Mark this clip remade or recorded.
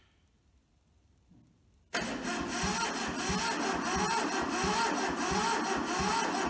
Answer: recorded